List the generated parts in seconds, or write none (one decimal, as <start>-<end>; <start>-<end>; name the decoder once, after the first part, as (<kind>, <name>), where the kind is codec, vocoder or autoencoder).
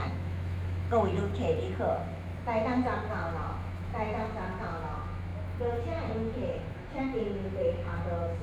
0.0-2.3 (autoencoder, DAC-VAE); 3.1-8.4